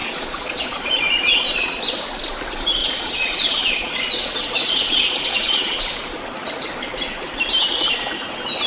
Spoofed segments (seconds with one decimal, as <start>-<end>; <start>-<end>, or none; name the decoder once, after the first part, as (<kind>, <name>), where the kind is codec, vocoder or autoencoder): 0.0-1.8 (vocoder, Vocos); 2.8-5.8

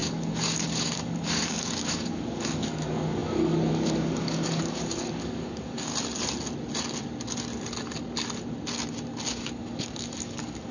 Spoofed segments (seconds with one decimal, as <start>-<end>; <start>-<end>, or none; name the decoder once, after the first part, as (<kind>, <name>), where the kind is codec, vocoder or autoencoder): 0.0-5.9 (codec, DAC); 9.3-10.7

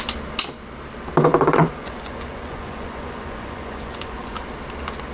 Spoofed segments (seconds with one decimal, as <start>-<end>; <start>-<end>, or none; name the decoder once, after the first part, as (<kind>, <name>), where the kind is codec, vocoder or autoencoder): 1.3-4.4 (vocoder, Vocos)

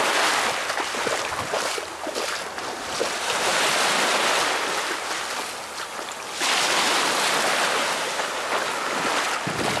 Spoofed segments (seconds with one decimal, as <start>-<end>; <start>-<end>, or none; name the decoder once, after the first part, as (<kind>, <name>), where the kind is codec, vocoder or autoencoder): none

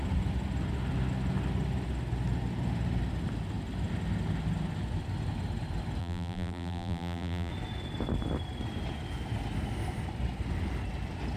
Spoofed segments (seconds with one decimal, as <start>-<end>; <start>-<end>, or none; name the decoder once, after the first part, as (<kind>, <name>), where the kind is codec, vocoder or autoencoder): 6.0-7.5 (vocoder, BigVGAN v2)